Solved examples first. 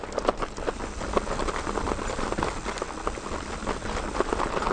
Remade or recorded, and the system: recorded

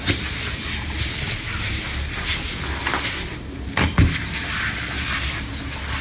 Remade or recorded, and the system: recorded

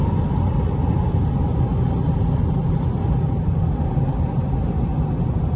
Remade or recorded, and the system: recorded